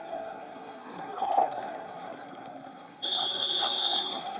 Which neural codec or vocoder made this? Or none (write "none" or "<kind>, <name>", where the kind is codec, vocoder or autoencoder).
codec, SNAC